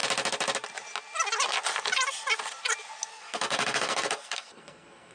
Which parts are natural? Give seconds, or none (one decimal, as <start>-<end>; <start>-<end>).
0.0-3.1